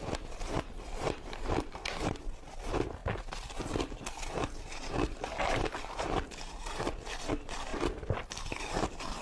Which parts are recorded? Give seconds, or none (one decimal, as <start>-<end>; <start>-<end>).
0.0-9.2